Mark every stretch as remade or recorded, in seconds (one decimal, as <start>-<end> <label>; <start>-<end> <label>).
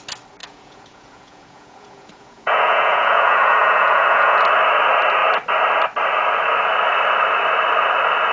0.0-0.4 recorded; 0.4-4.4 remade; 4.4-8.3 recorded